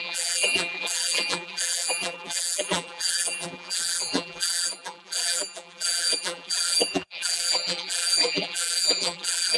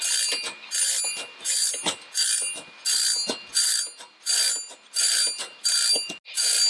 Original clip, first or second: second